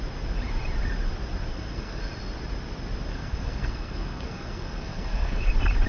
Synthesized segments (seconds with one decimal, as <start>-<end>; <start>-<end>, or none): 1.5-2.0; 3.1-5.5